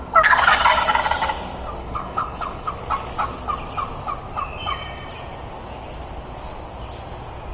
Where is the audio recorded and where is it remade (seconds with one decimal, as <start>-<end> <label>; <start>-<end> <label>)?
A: 0.0-1.8 recorded; 1.8-2.7 remade; 2.7-7.5 recorded